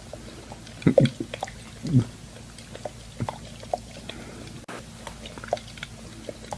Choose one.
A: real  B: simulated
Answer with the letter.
A